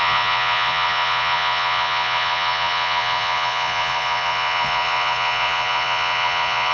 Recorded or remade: remade